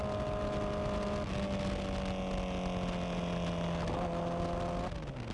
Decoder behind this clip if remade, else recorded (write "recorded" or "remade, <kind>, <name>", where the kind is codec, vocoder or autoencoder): recorded